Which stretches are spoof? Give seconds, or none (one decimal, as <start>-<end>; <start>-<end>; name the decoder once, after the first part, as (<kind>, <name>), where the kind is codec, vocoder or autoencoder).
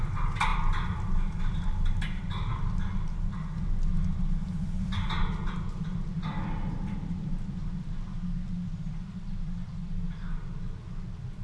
none